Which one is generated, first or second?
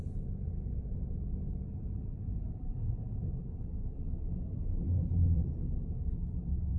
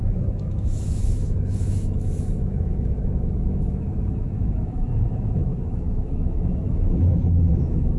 second